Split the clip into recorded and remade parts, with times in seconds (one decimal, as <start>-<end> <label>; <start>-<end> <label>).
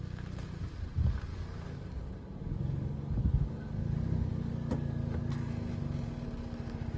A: 0.0-1.3 recorded; 1.3-5.5 remade; 5.5-7.0 recorded